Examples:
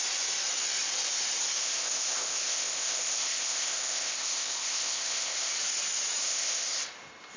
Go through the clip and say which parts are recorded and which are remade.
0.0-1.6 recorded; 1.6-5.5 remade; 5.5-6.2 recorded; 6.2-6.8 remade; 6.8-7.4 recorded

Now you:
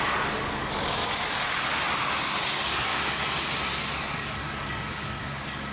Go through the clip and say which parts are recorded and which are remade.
0.0-1.0 remade; 1.0-2.4 recorded; 2.4-2.9 remade; 2.9-3.8 recorded; 3.8-5.7 remade

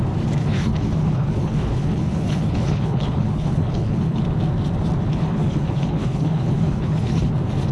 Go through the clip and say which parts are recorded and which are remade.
0.0-0.4 recorded; 0.4-4.2 remade; 4.2-5.1 recorded; 5.1-7.3 remade; 7.3-7.7 recorded

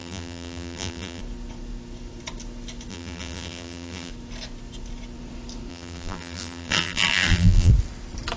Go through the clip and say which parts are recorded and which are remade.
0.0-1.2 remade; 1.2-2.9 recorded; 2.9-4.1 remade; 4.1-5.7 recorded; 5.7-7.7 remade; 7.7-8.4 recorded